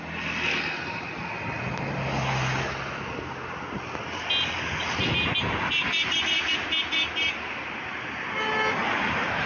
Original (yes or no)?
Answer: yes